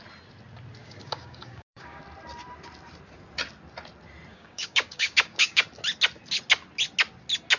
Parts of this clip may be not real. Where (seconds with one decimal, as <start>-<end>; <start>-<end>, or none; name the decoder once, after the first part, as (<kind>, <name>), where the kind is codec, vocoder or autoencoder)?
0.8-2.0 (codec, DAC); 4.3-5.6